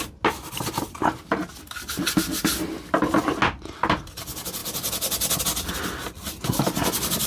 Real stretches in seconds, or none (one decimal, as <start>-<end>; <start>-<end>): 0.0-7.3